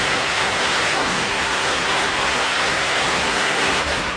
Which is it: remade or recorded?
remade